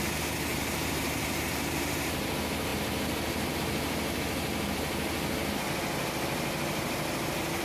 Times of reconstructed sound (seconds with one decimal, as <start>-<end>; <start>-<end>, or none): 0.5-2.3